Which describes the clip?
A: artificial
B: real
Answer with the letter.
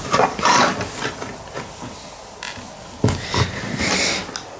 B